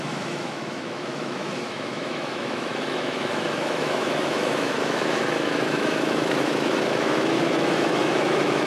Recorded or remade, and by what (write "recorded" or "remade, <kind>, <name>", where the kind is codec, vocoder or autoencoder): remade, autoencoder, DAC-VAE